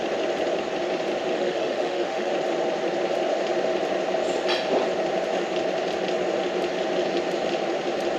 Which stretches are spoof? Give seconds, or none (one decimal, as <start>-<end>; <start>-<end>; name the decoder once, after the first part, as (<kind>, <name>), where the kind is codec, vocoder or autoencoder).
1.3-2.3 (autoencoder, DAC-VAE)